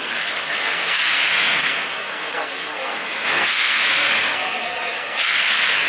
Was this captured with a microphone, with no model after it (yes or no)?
no